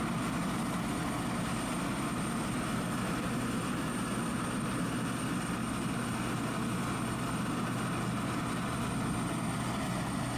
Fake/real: real